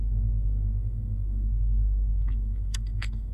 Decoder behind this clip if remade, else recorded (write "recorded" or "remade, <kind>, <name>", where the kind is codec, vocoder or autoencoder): remade, codec, SNAC